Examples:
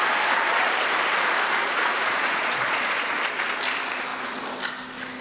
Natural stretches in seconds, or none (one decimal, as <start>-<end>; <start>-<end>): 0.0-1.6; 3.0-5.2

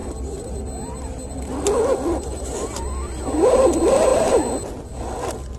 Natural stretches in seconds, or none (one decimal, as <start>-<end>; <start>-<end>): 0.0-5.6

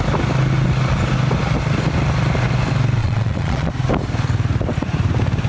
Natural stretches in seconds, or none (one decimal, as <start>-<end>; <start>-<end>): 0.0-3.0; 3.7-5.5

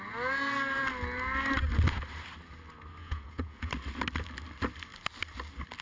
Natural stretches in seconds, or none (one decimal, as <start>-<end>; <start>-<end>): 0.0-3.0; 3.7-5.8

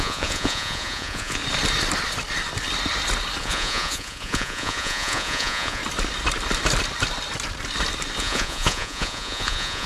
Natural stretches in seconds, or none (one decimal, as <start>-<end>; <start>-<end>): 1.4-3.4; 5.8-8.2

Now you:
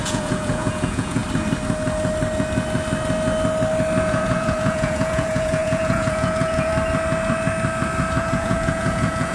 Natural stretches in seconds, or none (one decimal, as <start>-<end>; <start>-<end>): 1.2-4.0; 6.7-8.2

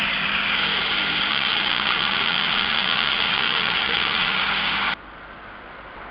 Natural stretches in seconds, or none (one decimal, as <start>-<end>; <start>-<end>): 0.0-1.3; 4.4-6.1

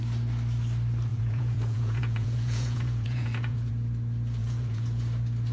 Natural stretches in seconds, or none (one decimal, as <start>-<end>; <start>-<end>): 0.0-1.1; 3.7-4.4; 5.0-5.5